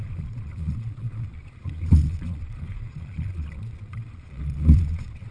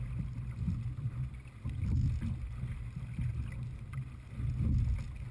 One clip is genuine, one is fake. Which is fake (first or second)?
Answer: first